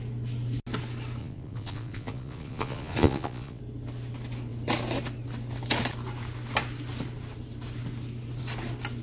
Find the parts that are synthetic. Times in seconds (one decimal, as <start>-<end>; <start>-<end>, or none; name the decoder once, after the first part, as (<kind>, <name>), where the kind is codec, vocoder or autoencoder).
1.2-3.6 (vocoder, Vocos)